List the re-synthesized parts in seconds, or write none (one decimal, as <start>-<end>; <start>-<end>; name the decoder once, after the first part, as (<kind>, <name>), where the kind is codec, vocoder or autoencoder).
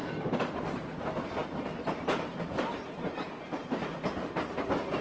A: none